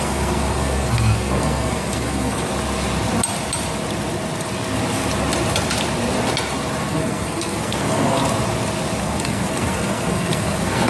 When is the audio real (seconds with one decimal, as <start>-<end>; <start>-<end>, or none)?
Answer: 2.5-6.8; 8.2-9.0